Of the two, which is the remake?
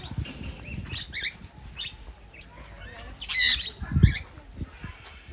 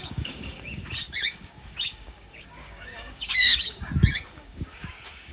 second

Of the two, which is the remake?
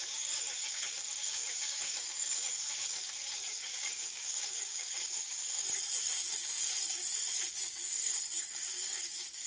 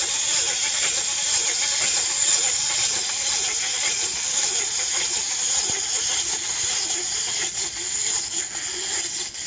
first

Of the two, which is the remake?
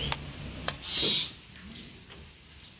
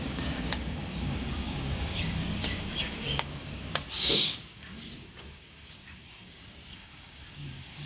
second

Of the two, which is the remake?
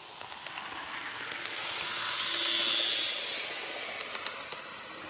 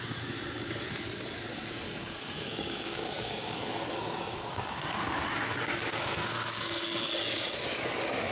second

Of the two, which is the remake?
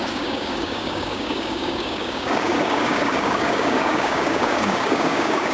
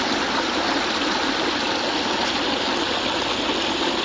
first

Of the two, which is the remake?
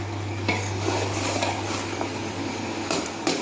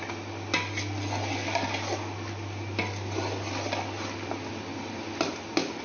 first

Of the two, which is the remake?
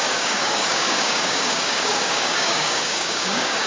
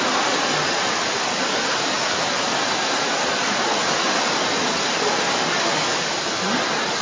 first